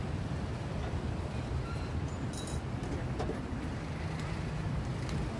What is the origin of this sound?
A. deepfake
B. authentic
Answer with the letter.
B